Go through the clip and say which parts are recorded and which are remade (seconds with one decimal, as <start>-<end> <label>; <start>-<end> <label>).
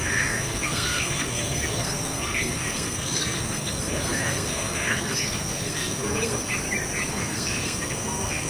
0.0-6.5 remade; 6.5-7.1 recorded; 7.1-8.5 remade